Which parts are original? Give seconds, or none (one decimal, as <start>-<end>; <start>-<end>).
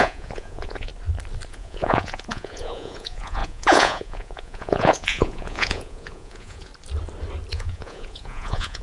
0.9-1.5; 6.7-7.5